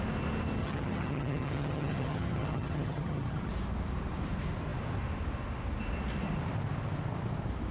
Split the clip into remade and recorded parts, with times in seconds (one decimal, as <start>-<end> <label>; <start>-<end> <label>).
0.0-0.6 recorded; 0.6-3.5 remade; 3.5-7.7 recorded

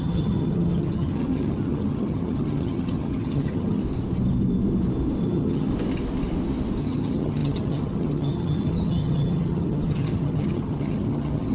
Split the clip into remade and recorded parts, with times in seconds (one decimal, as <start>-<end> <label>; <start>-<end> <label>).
0.0-3.8 remade; 3.8-5.2 recorded; 5.2-5.7 remade; 5.7-6.8 recorded; 6.8-11.5 remade

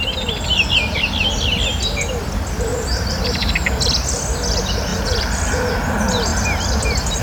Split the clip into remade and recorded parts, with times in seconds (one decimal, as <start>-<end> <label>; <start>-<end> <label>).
0.0-2.7 recorded; 2.7-3.5 remade; 3.5-4.9 recorded; 4.9-5.5 remade; 5.5-7.2 recorded